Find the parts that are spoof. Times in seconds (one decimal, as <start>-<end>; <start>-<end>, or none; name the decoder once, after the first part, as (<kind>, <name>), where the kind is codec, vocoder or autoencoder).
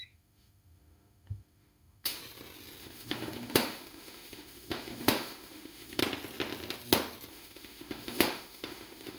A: 0.0-2.2 (autoencoder, DAC-VAE); 2.8-6.0; 7.3-9.2